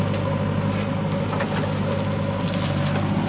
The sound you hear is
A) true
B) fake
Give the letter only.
A